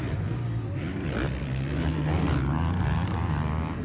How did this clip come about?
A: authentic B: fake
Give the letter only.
A